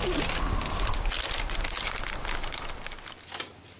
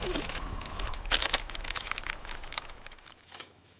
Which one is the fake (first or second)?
second